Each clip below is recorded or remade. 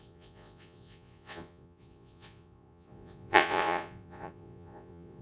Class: remade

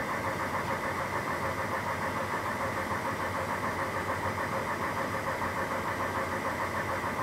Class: recorded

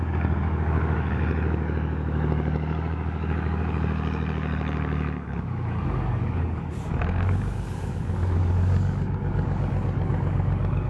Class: remade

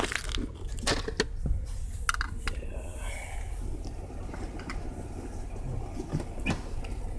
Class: recorded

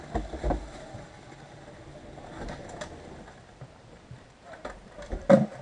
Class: recorded